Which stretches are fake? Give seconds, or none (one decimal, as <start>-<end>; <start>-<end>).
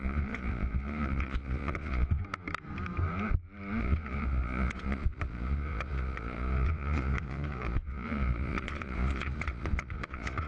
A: 0.0-2.2; 3.8-10.5